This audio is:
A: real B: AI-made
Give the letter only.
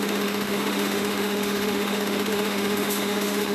B